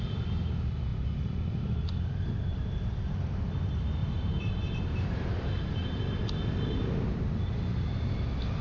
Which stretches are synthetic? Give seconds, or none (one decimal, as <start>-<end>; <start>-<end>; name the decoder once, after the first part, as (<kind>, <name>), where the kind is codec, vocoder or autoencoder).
4.0-6.4 (vocoder, BigVGAN v2)